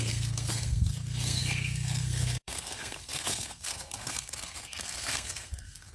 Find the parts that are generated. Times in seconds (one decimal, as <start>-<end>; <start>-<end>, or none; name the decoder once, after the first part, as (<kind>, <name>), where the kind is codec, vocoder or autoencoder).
0.0-5.9 (codec, SNAC)